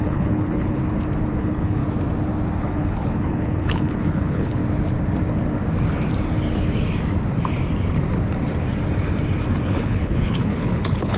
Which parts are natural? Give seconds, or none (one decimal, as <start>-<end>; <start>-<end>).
0.8-1.4; 1.8-2.6; 4.6-9.7

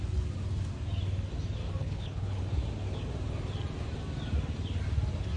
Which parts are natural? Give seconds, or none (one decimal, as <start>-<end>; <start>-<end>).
0.0-1.8; 2.4-5.4

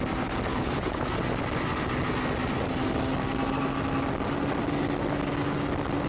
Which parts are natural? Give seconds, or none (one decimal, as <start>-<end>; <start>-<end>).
0.0-0.5; 1.1-6.1